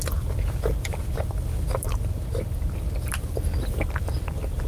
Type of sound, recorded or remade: recorded